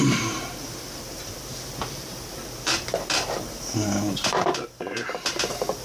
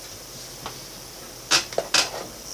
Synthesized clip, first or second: first